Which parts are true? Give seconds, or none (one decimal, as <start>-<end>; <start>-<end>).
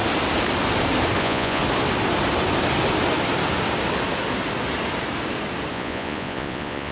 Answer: 0.0-1.2; 1.6-5.7